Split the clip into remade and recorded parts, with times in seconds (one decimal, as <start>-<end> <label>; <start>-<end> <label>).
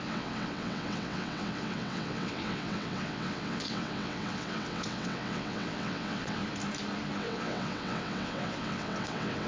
0.0-6.4 remade; 6.4-7.2 recorded; 7.2-9.5 remade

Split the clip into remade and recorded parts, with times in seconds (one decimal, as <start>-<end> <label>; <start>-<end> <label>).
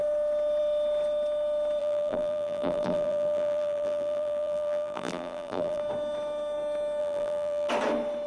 0.0-1.8 recorded; 1.8-5.8 remade; 5.8-7.0 recorded; 7.0-7.7 remade; 7.7-8.3 recorded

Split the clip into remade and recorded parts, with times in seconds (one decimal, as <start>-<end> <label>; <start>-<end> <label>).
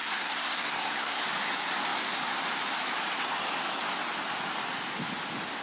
0.0-1.2 remade; 1.2-5.6 recorded